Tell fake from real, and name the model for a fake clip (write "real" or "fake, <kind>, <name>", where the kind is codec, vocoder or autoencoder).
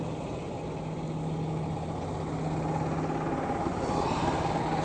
real